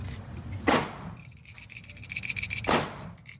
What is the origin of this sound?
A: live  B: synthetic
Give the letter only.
A